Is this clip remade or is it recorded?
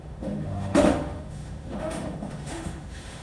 remade